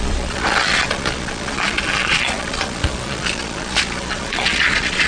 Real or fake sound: fake